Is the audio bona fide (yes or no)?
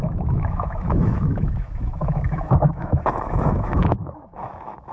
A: no